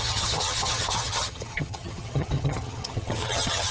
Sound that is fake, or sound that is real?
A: fake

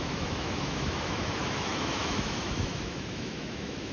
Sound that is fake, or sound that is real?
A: fake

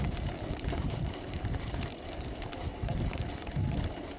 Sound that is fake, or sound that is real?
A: fake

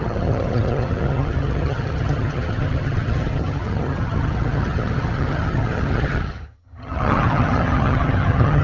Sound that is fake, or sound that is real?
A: fake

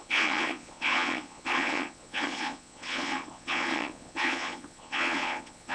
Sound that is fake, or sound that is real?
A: fake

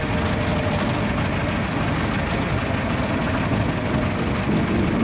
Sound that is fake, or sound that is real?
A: real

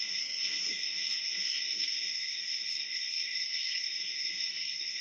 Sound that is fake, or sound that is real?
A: fake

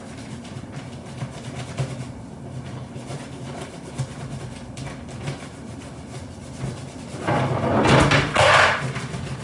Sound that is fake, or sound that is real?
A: real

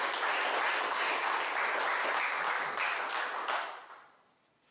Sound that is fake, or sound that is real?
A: real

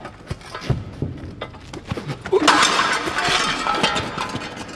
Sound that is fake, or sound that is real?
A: real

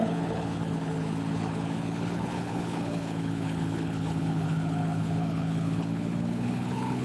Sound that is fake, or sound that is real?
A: fake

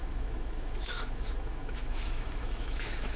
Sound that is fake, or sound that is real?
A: fake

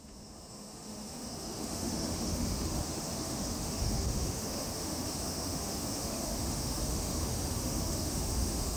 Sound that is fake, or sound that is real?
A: fake